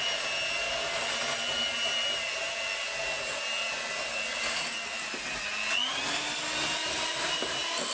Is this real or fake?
real